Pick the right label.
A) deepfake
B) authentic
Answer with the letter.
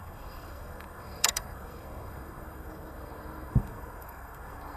A